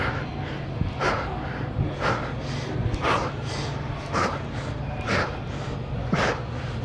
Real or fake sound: real